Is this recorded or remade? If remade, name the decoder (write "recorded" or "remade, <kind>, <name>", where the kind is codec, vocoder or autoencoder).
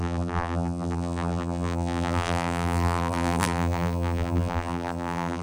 remade, vocoder, BigVGAN v2